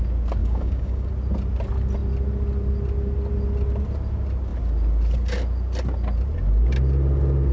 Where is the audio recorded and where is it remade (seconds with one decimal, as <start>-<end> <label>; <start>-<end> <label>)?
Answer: 0.0-0.4 recorded; 0.4-1.1 remade; 1.1-7.5 recorded

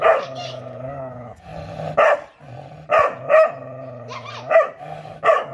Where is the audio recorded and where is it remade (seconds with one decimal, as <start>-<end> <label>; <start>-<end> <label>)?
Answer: 0.0-1.5 remade; 1.5-4.8 recorded; 4.8-5.5 remade

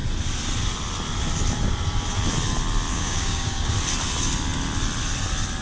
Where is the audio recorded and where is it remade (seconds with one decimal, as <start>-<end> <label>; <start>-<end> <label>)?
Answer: 0.0-2.9 recorded; 2.9-3.7 remade; 3.7-5.6 recorded